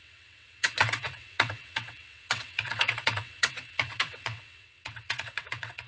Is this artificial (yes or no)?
yes